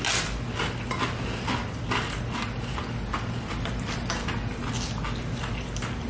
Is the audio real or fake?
real